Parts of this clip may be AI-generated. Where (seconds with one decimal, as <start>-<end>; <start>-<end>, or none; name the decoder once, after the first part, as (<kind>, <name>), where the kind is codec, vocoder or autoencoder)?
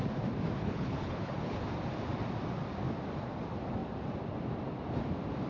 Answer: 0.6-1.6 (codec, HILCodec)